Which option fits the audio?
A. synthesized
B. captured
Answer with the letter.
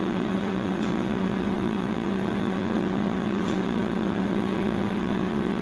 A